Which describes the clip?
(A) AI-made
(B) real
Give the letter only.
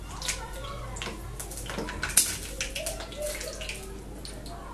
B